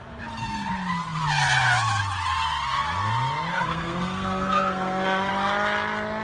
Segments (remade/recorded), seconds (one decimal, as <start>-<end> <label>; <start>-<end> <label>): 0.0-3.5 recorded; 3.5-5.3 remade; 5.3-6.2 recorded